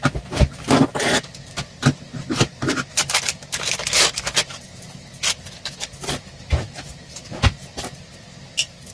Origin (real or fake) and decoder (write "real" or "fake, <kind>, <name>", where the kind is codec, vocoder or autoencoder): real